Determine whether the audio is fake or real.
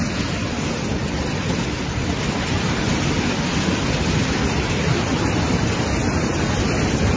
real